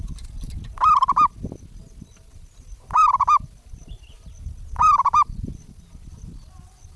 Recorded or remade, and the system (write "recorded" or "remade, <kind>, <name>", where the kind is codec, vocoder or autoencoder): recorded